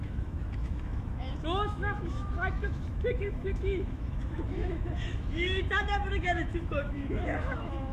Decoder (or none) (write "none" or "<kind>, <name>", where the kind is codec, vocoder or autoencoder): autoencoder, DAC-VAE